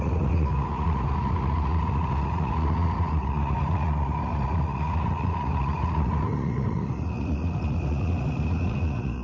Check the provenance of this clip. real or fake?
fake